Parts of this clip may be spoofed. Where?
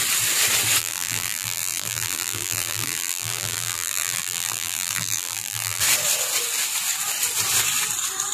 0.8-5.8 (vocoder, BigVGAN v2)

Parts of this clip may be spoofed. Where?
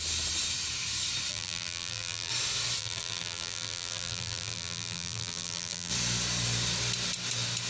1.3-2.3 (vocoder, BigVGAN v2); 2.8-5.9